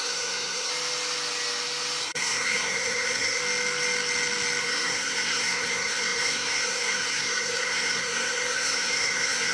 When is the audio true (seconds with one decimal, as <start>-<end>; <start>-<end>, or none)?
0.7-2.0; 3.4-4.6